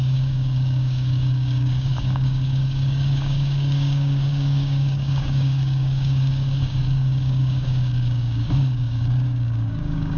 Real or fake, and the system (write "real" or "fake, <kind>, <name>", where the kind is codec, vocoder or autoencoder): fake, codec, DAC